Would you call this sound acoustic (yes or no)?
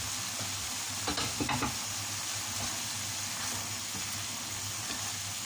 yes